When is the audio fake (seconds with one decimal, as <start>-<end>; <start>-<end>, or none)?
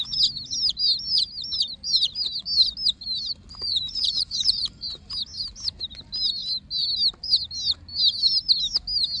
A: 3.7-4.8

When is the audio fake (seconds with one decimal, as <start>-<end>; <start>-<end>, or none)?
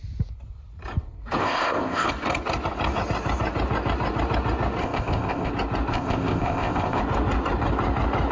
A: 1.4-2.1; 4.8-5.5; 5.9-7.0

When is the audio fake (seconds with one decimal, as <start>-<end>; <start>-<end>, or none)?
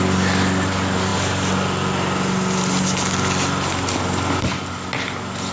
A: none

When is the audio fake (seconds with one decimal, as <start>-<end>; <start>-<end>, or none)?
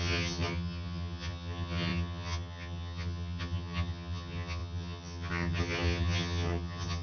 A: 0.0-7.0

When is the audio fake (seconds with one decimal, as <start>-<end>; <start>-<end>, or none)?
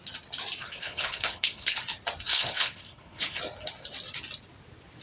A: 0.6-1.8; 2.3-3.4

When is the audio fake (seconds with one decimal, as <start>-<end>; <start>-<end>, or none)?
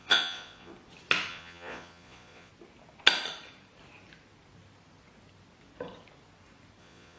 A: 0.0-0.7; 1.3-2.5; 6.8-7.2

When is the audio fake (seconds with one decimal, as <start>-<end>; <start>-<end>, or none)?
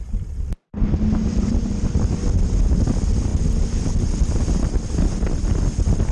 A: none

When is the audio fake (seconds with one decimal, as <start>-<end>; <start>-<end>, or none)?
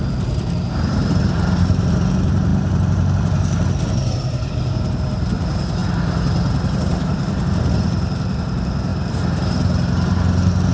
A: 0.0-5.8; 6.8-10.7